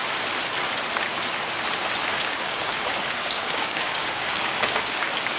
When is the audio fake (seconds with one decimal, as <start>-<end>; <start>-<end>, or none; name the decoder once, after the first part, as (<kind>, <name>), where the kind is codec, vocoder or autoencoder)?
2.1-5.4 (codec, DAC)